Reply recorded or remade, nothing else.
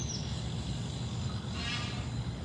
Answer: recorded